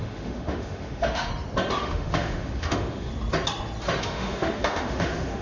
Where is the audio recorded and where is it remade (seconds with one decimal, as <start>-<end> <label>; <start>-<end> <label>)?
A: 0.0-1.3 remade; 1.3-1.8 recorded; 1.8-3.1 remade; 3.1-4.0 recorded; 4.0-5.4 remade